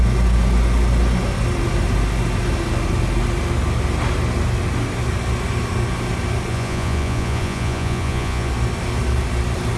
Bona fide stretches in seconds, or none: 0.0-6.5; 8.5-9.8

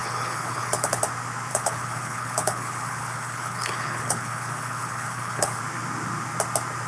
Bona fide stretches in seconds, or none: 1.0-1.5; 5.6-6.9

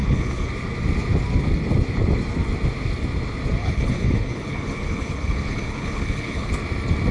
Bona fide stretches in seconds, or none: 0.5-3.6; 6.5-7.1

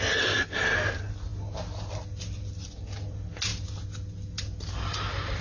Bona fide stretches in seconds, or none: 0.0-5.4

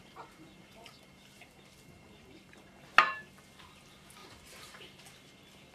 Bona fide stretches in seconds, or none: 2.7-4.2; 5.0-5.7

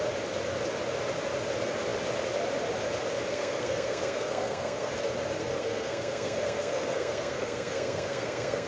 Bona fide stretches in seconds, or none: 0.0-3.3; 4.9-5.4

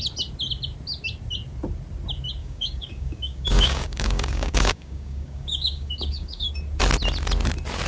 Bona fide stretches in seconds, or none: 0.0-2.4; 6.5-7.9